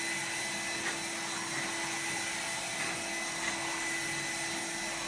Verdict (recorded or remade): recorded